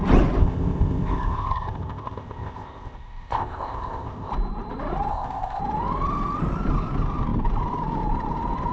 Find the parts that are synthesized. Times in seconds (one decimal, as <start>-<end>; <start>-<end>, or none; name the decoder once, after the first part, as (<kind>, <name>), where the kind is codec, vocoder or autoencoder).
0.4-4.3 (codec, ZipCodec); 5.1-5.6